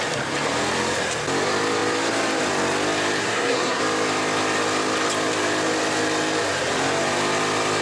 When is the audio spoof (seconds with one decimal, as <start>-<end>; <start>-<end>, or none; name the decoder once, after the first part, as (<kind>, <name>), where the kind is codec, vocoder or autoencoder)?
3.2-3.8 (codec, SNAC)